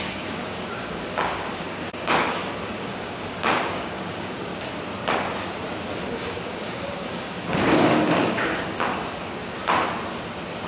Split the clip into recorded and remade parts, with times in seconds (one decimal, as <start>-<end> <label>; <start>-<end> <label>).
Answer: 0.0-4.5 remade; 4.5-6.1 recorded; 6.1-9.4 remade; 9.4-10.7 recorded